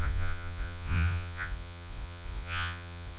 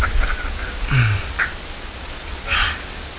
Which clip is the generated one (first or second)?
first